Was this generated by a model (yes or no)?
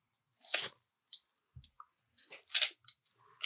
no